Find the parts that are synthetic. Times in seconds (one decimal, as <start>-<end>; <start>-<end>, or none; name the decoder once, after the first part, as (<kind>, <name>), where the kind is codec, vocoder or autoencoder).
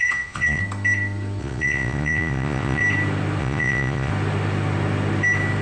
0.0-0.6 (vocoder, Vocos); 1.4-2.8; 3.4-4.1